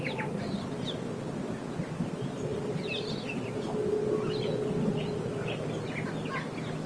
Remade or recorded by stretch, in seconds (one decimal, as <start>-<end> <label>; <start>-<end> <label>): 0.0-6.9 recorded